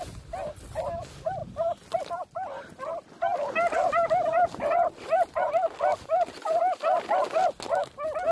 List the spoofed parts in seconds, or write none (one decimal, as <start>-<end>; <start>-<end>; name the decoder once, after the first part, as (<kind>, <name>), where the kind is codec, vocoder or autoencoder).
none